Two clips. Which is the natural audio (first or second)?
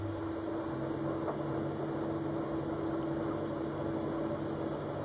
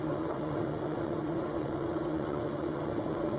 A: first